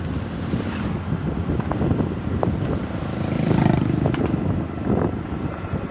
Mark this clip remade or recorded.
remade